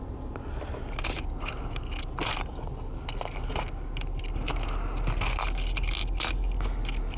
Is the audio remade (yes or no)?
no